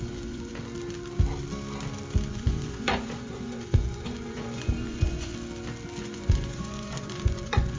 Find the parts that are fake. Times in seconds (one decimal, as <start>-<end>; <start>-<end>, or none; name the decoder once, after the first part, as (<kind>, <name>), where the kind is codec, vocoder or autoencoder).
0.0-0.5 (vocoder, Vocos); 2.3-5.3; 6.0-7.8